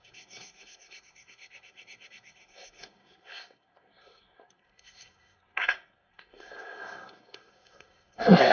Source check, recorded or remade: remade